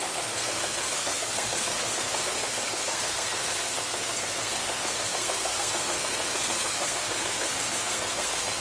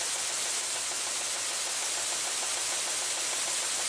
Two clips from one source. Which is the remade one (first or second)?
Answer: first